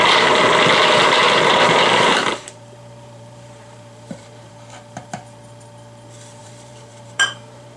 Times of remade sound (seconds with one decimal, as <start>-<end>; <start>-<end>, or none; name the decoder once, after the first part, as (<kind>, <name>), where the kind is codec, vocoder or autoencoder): 1.2-4.5 (vocoder, BigVGAN v2); 6.4-7.8